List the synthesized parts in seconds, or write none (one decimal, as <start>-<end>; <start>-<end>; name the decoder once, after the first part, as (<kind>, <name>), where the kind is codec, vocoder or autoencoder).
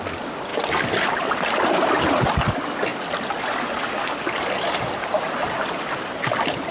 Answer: none